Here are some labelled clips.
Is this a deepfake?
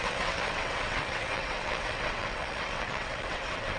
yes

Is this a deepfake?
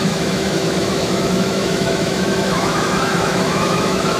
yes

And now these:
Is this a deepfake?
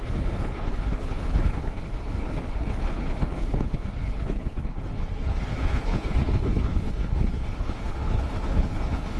yes